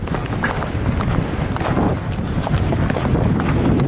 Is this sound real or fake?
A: real